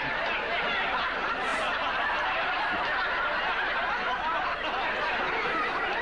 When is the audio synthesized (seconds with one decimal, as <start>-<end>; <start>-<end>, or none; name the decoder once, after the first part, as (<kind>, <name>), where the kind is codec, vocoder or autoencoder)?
none